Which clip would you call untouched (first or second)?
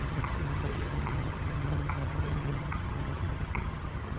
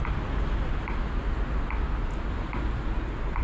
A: second